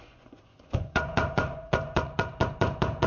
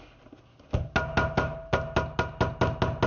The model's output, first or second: first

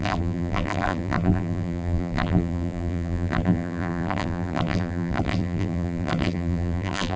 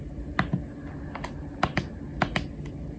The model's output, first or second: first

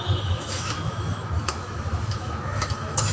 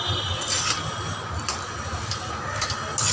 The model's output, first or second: first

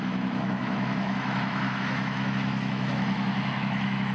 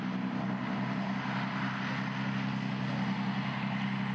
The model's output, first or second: first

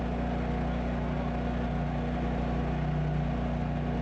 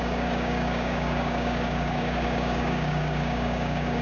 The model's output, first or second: second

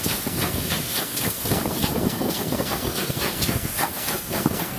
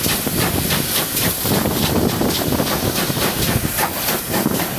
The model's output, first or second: first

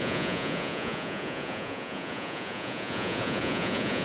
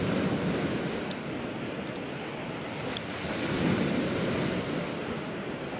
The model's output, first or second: first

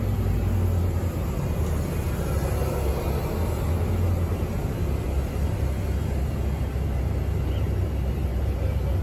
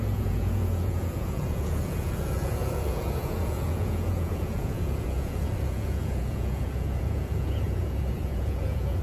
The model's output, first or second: second